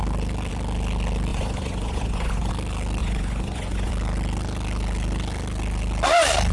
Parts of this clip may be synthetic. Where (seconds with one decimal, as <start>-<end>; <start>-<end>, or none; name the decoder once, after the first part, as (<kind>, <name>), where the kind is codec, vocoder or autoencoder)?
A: 1.3-2.5 (vocoder, Vocos); 3.0-3.9